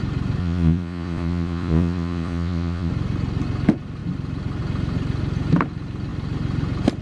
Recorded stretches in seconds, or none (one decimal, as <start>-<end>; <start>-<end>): 0.0-0.4; 2.9-7.0